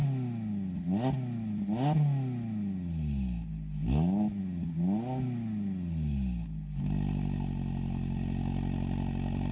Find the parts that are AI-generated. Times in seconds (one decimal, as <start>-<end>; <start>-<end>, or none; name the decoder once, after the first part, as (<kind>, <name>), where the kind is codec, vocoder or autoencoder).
none